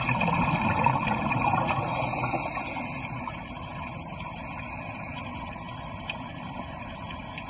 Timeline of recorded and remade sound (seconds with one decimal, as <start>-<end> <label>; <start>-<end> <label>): 0.0-7.5 remade